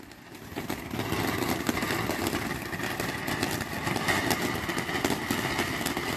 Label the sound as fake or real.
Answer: real